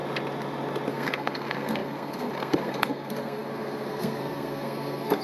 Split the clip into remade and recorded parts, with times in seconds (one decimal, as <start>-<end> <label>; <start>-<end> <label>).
0.0-0.9 recorded; 0.9-5.2 remade